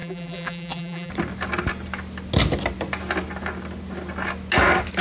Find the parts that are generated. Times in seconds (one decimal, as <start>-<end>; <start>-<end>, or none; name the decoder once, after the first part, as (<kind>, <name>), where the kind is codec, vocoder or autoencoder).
0.0-1.1 (vocoder, BigVGAN v2)